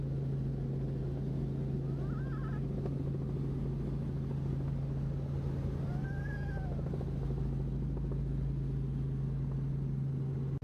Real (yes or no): yes